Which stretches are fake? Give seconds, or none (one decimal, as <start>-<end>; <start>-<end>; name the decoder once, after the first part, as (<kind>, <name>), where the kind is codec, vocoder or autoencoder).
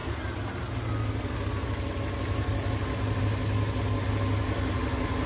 none